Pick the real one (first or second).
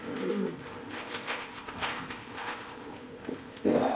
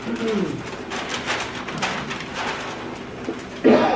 second